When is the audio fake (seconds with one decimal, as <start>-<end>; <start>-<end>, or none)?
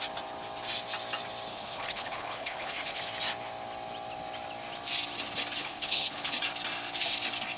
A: 1.5-3.0; 5.6-6.3